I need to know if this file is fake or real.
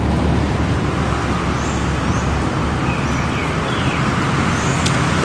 real